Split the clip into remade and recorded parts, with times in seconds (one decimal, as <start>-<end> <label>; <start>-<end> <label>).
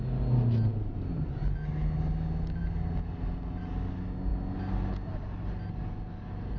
0.0-6.6 recorded